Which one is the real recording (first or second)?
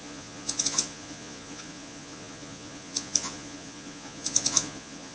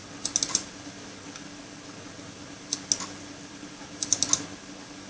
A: second